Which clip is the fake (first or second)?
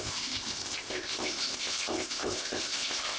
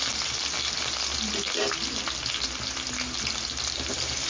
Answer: first